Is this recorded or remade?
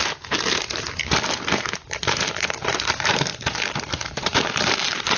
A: remade